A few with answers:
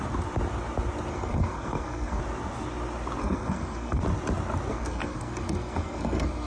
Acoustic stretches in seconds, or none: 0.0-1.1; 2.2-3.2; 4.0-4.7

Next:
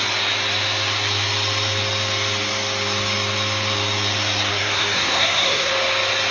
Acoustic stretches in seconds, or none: 0.0-4.5; 5.7-6.3

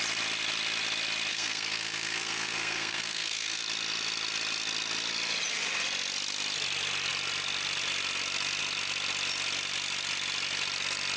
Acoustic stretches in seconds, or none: 0.0-1.3; 3.6-11.2

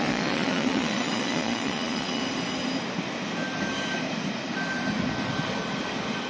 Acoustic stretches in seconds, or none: 2.2-6.3